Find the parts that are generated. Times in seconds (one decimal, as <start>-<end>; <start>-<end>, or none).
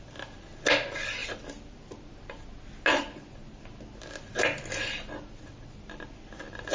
none